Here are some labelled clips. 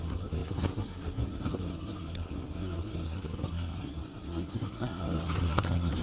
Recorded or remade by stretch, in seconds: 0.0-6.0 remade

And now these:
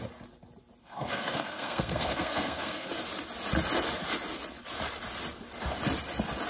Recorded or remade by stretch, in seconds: 0.0-0.8 recorded; 0.8-2.9 remade; 2.9-6.5 recorded